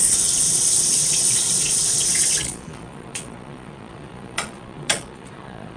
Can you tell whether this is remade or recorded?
remade